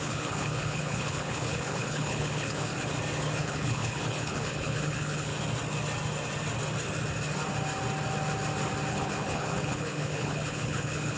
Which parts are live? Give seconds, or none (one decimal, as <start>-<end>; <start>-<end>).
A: 2.7-3.4; 5.3-8.9